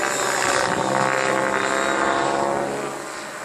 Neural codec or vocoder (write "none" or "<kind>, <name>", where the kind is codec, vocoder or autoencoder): none